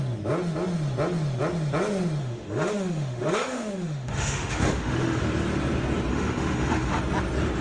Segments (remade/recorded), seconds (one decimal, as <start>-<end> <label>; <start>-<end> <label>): 0.0-2.2 recorded; 2.2-5.2 remade; 5.2-6.1 recorded; 6.1-7.0 remade; 7.0-7.6 recorded